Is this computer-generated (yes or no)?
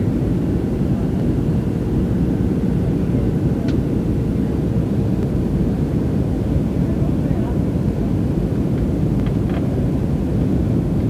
no